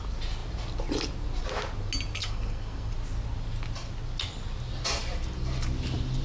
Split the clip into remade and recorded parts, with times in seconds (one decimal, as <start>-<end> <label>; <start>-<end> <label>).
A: 0.0-2.2 recorded; 2.2-2.9 remade; 2.9-6.2 recorded